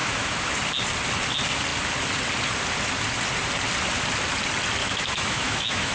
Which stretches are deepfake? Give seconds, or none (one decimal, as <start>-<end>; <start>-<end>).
0.0-0.5; 4.8-5.9